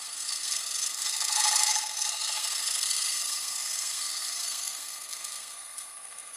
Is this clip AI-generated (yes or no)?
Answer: yes